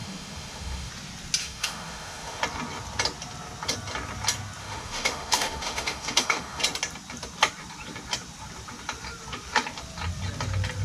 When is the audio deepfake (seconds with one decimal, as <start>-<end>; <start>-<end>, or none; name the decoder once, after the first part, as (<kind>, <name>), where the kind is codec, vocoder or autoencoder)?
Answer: 0.0-0.9 (autoencoder, DAC-VAE); 1.4-2.4; 4.6-6.6